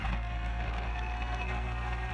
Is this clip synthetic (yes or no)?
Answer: yes